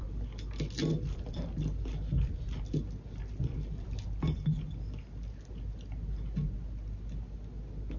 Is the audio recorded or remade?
recorded